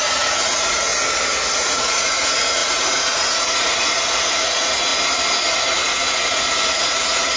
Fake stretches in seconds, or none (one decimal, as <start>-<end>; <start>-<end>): 0.0-0.9; 1.5-4.9; 5.7-7.4